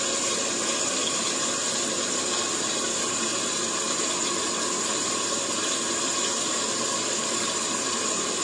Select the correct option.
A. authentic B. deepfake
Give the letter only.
A